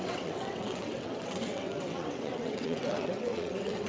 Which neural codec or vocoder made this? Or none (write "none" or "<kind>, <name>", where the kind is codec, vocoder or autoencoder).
vocoder, WaveNeXt